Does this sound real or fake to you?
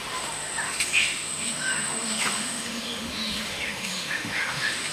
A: fake